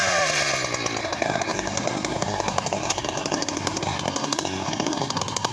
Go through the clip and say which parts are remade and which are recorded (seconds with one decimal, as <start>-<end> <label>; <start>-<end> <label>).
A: 0.0-1.0 recorded; 1.0-5.5 remade

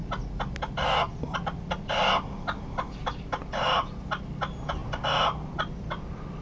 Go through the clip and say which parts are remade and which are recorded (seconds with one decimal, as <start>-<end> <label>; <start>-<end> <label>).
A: 0.0-6.4 recorded

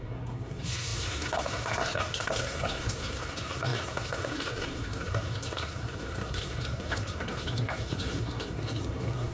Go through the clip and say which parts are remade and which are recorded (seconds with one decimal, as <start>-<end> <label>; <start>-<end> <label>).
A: 0.0-9.3 remade

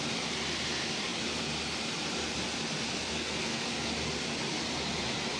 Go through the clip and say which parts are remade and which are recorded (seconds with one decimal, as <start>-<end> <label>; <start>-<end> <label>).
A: 0.0-3.1 recorded; 3.1-3.7 remade; 3.7-5.4 recorded

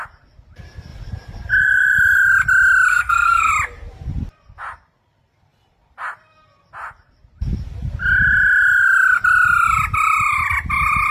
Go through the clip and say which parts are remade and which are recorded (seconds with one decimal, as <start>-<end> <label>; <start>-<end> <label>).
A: 0.0-2.9 recorded; 2.9-3.5 remade; 3.5-11.1 recorded

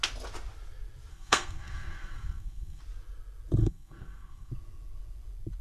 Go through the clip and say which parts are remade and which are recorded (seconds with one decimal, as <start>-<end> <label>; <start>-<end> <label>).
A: 0.0-1.1 recorded; 1.1-2.8 remade; 2.8-3.6 recorded; 3.6-4.5 remade; 4.5-5.6 recorded

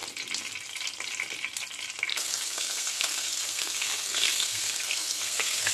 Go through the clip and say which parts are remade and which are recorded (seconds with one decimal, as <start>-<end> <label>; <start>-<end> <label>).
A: 0.0-2.1 recorded; 2.1-5.7 remade

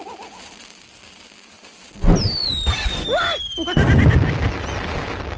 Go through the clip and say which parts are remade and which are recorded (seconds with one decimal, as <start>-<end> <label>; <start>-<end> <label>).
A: 0.0-5.4 recorded